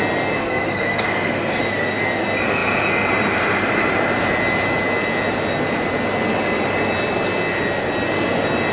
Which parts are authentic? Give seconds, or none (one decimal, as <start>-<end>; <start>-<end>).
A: 0.0-0.4; 1.6-8.7